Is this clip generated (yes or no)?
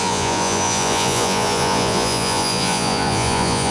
yes